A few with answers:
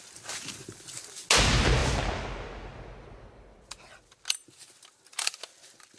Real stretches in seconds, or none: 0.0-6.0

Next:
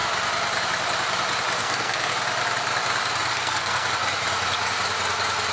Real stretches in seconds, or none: 0.0-1.6; 2.1-3.3; 3.9-5.5

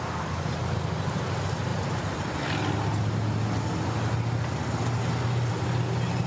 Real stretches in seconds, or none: 0.0-6.3